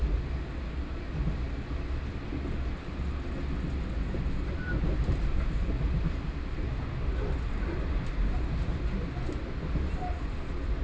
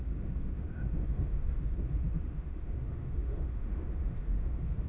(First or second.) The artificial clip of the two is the second